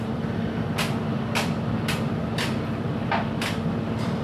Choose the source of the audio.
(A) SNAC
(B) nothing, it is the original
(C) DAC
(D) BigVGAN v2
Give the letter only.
B